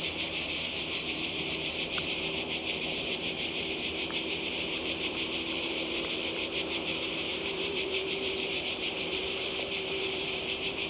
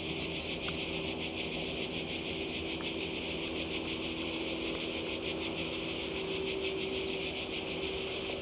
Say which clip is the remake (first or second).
first